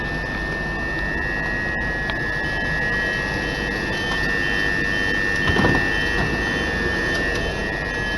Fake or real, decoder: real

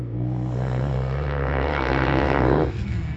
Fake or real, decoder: fake, codec, SNAC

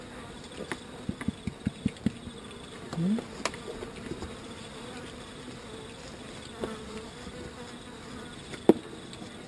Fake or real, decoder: real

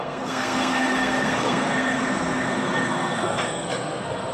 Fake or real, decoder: fake, codec, SNAC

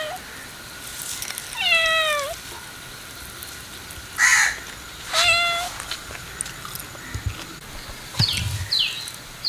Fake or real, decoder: real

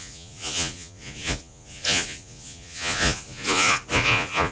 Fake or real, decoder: fake, vocoder, Vocos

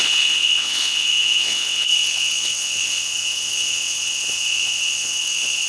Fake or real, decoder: fake, vocoder, WaveNeXt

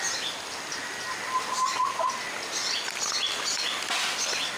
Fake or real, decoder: real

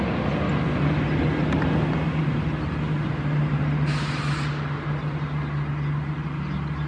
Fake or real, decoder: real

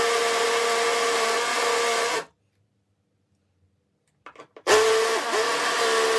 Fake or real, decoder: real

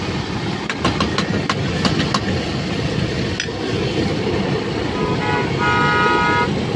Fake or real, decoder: real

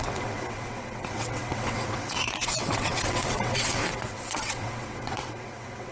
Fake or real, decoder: fake, vocoder, WaveNeXt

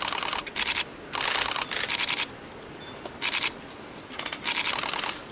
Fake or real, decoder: real